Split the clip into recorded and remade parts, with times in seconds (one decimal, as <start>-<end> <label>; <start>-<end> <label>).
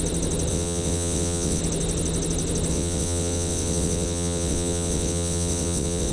0.0-0.5 recorded; 0.5-1.6 remade; 1.6-2.7 recorded; 2.7-6.1 remade